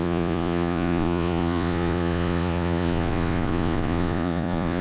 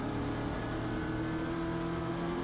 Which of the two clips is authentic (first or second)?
second